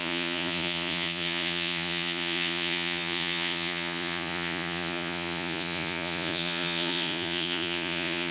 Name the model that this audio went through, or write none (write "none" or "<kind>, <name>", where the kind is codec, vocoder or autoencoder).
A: vocoder, Vocos